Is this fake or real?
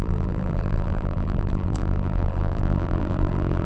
fake